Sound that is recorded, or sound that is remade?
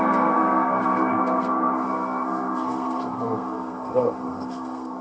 remade